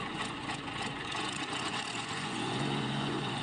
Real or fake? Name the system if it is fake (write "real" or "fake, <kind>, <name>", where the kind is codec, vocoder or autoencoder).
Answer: fake, vocoder, Vocos